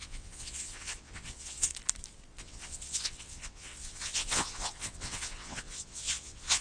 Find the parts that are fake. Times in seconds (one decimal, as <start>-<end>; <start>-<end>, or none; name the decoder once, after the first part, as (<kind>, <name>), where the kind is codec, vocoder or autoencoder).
0.0-1.7 (vocoder, WaveNeXt); 2.4-6.6